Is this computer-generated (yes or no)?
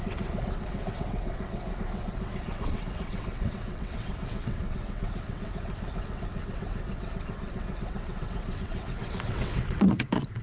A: yes